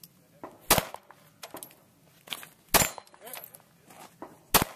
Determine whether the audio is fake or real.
real